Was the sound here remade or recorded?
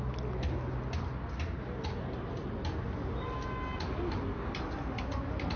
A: recorded